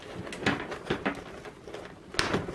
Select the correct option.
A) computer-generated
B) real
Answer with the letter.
B